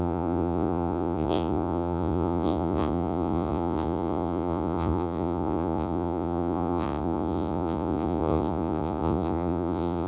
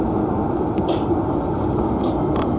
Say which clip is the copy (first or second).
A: first